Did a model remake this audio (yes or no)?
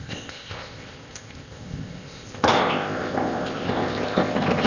yes